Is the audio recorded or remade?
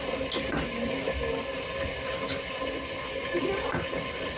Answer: recorded